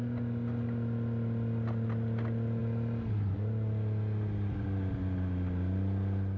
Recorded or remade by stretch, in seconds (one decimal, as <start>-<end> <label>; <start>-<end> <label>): 0.0-6.4 recorded